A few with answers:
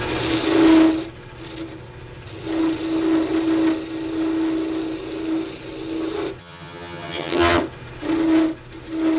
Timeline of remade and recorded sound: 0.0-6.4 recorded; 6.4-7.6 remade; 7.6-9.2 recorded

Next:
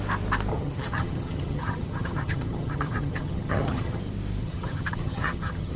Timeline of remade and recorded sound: 0.0-0.5 recorded; 0.5-4.0 remade; 4.0-4.4 recorded; 4.4-5.8 remade

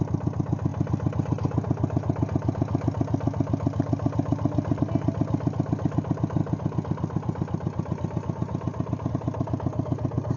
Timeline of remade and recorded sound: 0.0-10.4 recorded